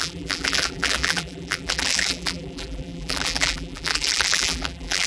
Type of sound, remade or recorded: remade